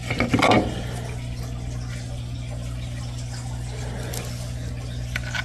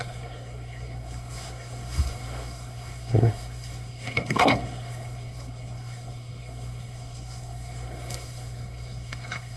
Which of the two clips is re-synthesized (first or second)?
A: second